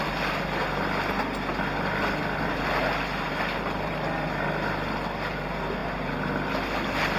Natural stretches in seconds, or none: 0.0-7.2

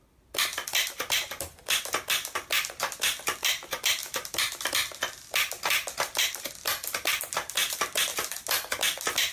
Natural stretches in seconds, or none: 0.0-9.3

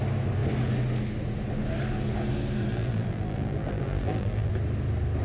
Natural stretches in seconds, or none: 0.0-2.7; 4.5-5.2

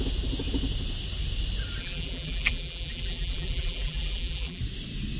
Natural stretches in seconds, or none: 0.0-1.8; 4.6-5.2